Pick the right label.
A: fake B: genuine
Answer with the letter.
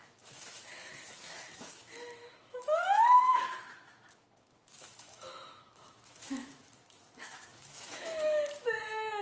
A